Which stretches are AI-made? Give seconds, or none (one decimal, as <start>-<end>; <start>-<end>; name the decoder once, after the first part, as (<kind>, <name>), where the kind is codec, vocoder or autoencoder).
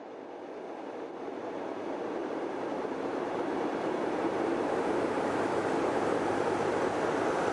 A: 2.2-6.7 (vocoder, BigVGAN v2)